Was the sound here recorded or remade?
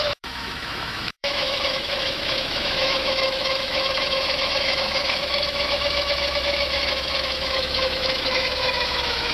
remade